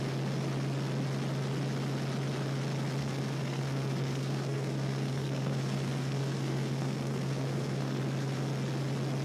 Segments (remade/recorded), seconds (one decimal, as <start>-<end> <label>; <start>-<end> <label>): 0.0-3.0 recorded; 3.0-8.0 remade; 8.0-9.2 recorded